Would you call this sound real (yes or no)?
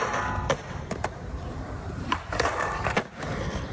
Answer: no